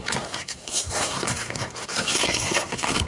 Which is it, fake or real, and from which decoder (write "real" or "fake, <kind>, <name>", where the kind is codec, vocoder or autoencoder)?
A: fake, codec, SNAC